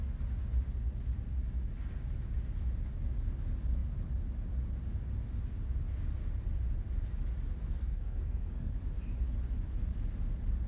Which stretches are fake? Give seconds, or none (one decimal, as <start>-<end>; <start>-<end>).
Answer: 7.6-8.7